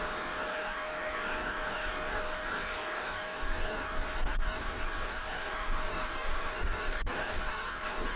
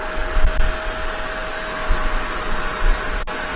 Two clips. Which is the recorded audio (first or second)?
second